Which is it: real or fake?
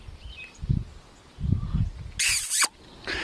real